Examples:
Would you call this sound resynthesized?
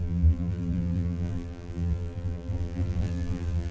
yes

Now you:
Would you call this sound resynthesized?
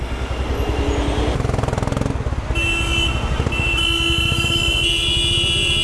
no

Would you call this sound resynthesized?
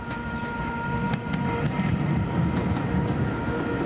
no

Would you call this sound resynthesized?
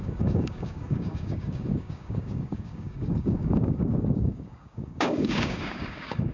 yes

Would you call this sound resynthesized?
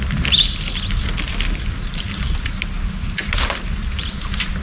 no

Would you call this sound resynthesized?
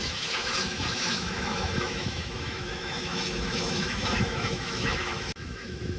yes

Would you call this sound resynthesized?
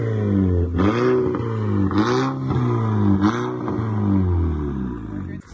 no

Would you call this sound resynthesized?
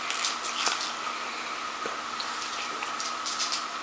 no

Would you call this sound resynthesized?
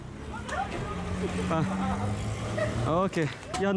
no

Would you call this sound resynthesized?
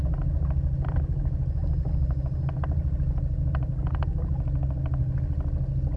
no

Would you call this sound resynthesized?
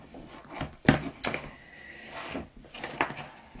no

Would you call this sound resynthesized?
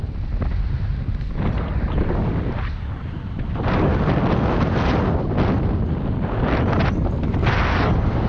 no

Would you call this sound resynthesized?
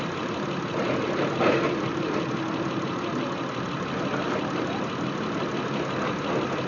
no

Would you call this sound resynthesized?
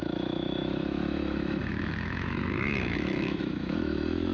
yes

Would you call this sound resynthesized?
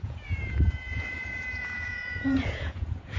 yes